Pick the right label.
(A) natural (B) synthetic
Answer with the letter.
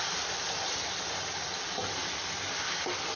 A